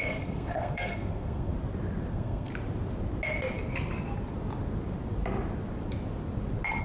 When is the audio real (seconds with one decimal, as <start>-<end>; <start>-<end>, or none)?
1.5-2.1; 2.5-6.8